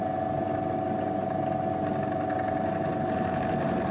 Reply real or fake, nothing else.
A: real